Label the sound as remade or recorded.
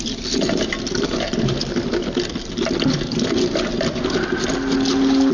recorded